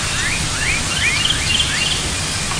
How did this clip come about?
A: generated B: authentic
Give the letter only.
B